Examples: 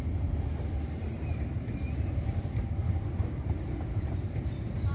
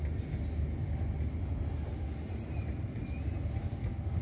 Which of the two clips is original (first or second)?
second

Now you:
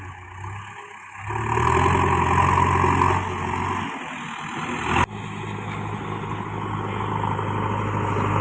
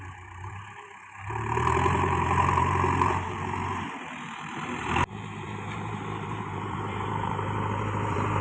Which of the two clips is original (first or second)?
first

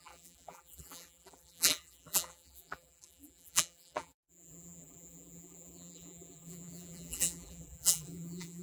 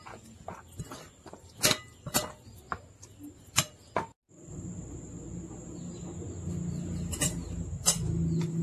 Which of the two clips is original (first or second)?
second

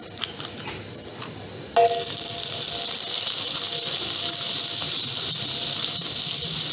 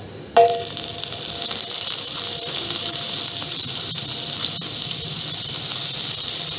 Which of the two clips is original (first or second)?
first